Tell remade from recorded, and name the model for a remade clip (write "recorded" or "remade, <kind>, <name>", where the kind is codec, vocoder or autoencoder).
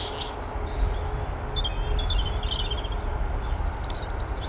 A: recorded